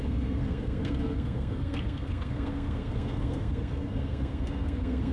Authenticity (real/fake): fake